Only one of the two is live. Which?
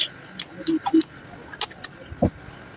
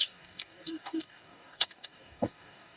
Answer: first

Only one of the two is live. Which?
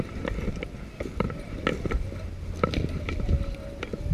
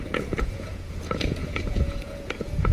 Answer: first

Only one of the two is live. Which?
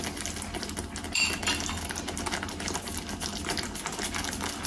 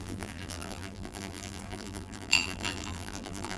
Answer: first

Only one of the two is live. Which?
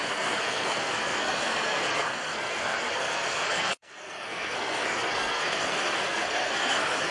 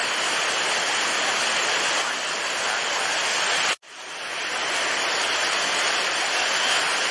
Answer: second